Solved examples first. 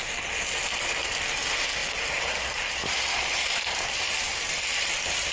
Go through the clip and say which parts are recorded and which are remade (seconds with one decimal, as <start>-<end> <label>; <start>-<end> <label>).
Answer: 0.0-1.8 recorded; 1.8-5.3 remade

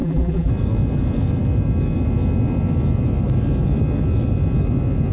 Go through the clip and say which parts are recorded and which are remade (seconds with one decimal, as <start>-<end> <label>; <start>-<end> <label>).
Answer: 0.0-0.5 remade; 0.5-5.1 recorded

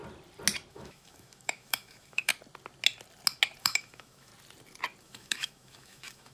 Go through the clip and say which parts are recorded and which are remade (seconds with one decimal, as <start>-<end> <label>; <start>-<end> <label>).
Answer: 0.0-0.7 recorded; 0.7-2.3 remade; 2.3-3.6 recorded; 3.6-4.3 remade; 4.3-5.0 recorded; 5.0-6.3 remade

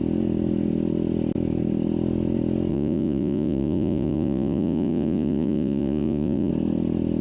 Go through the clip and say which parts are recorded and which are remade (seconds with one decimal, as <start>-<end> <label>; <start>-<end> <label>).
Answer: 0.0-2.7 recorded; 2.7-6.5 remade; 6.5-7.2 recorded

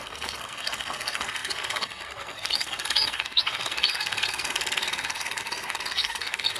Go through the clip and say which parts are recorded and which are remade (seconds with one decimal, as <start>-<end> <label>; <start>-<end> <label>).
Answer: 0.0-6.6 remade